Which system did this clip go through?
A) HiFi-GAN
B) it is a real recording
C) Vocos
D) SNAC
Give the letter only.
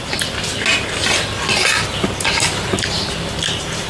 B